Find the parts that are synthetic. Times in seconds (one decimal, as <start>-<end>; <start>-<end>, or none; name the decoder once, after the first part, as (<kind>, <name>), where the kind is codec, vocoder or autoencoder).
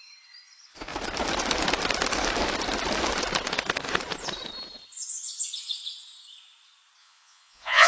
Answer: 7.0-7.9 (vocoder, Vocos)